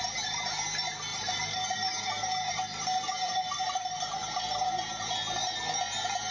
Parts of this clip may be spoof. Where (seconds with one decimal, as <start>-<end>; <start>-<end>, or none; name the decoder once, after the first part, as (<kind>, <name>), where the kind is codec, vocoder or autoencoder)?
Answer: 1.1-4.9 (vocoder, BigVGAN v2)